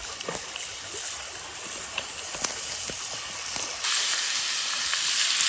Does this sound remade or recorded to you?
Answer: recorded